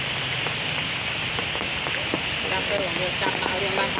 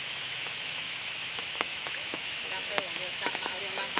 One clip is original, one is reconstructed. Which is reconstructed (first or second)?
second